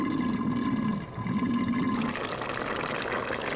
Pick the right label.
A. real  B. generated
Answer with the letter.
A